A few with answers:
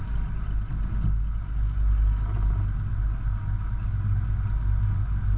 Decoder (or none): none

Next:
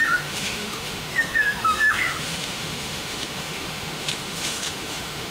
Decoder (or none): autoencoder, DAC-VAE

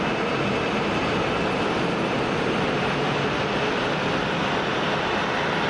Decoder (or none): none